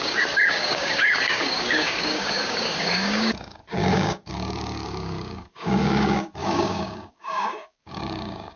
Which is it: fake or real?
fake